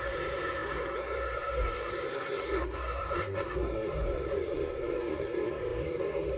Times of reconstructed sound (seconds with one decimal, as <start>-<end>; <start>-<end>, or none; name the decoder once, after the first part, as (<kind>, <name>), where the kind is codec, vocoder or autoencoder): 0.0-6.4 (codec, SNAC)